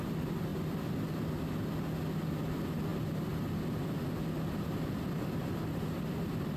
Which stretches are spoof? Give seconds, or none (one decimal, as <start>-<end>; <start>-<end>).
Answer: 0.0-0.5; 2.5-2.9; 5.0-6.6